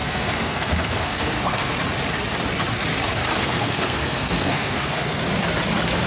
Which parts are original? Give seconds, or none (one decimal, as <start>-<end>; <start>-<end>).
1.7-3.3; 5.2-6.1